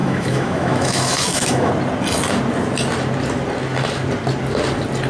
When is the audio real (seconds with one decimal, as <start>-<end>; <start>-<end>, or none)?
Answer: 1.7-5.1